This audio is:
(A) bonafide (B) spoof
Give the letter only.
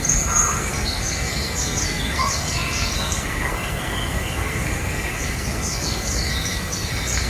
B